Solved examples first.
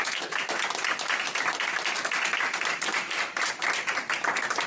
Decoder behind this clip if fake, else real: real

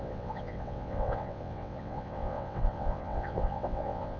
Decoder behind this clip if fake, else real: fake, vocoder, WaveNeXt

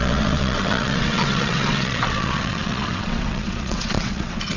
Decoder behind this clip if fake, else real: fake, vocoder, WaveNeXt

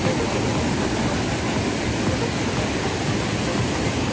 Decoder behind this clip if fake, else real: real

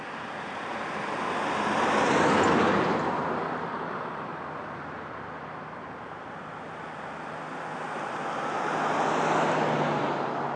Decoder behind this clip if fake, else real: real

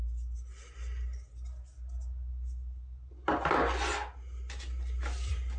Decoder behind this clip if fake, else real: real